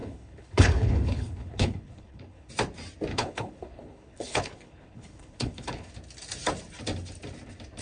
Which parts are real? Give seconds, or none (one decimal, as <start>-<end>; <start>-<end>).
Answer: 2.5-3.1; 5.9-7.8